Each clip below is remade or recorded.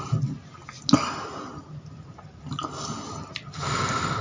recorded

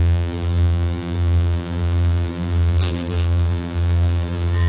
remade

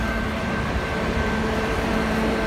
remade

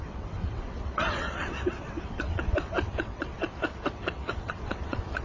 remade